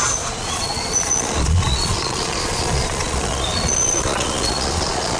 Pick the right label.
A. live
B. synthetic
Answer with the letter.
B